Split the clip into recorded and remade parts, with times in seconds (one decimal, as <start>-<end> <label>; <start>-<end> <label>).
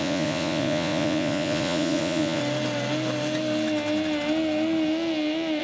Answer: 0.0-2.4 remade; 2.4-5.6 recorded